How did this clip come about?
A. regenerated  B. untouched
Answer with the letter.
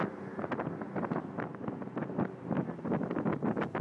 B